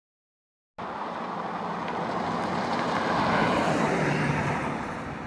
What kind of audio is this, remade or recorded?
recorded